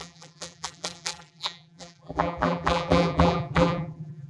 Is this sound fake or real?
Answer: fake